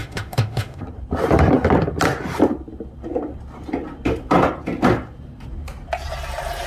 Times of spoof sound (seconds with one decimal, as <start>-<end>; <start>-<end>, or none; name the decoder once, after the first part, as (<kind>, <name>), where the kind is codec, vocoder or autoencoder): 0.0-0.8 (autoencoder, DAC-VAE)

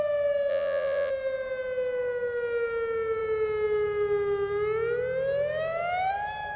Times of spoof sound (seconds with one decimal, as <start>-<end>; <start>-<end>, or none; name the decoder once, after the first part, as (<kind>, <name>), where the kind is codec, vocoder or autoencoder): 0.5-1.1 (vocoder, Vocos)